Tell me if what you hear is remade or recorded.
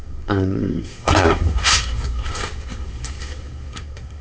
remade